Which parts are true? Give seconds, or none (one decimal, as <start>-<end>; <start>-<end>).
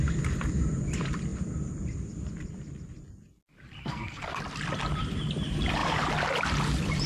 0.0-3.8; 4.4-7.1